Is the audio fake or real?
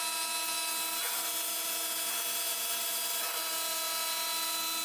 real